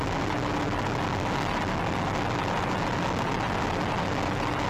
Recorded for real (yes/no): yes